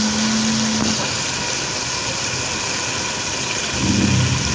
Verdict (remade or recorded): recorded